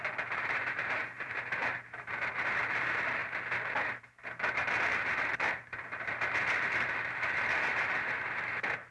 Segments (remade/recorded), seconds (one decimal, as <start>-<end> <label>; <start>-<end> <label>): 0.0-3.2 remade; 3.2-4.5 recorded; 4.5-8.9 remade